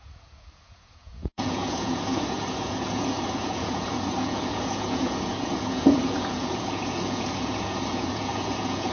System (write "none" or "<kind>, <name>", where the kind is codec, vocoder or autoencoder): vocoder, Vocos